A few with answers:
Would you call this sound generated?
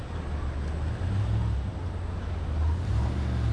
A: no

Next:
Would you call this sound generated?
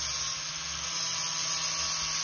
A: no